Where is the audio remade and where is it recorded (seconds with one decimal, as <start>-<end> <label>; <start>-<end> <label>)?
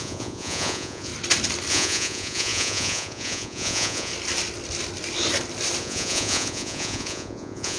0.0-1.1 remade; 1.1-1.7 recorded; 1.7-4.1 remade; 4.1-5.8 recorded; 5.8-7.8 remade